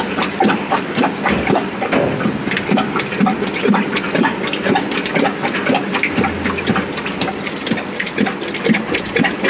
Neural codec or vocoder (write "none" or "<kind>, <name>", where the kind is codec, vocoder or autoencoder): none